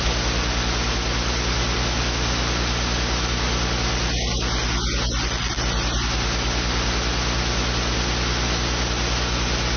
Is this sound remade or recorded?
recorded